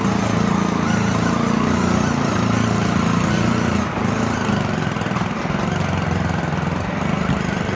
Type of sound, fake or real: real